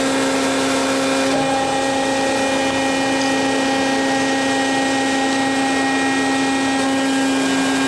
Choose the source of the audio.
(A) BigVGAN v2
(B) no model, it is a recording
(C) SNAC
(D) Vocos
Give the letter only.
B